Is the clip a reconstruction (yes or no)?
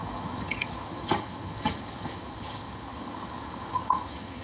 yes